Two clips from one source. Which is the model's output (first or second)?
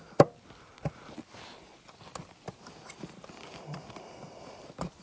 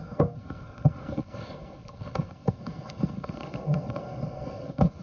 second